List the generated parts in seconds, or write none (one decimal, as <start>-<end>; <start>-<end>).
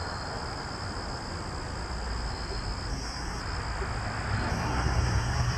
2.9-3.4; 4.5-5.6